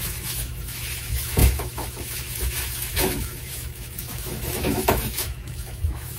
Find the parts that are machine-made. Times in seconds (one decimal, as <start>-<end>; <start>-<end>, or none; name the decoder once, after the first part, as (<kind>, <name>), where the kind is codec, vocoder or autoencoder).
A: 0.0-6.2 (autoencoder, DAC-VAE)